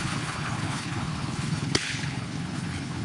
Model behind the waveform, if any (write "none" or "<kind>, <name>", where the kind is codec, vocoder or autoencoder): codec, HILCodec